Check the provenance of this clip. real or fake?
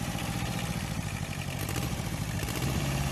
fake